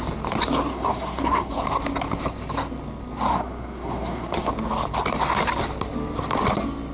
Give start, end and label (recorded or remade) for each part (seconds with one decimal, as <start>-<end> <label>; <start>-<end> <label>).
0.0-0.7 recorded; 0.7-1.5 remade; 1.5-3.3 recorded; 3.3-4.5 remade; 4.5-6.9 recorded